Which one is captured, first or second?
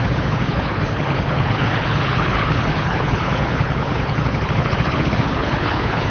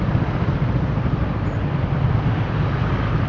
second